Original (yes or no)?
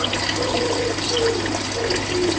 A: yes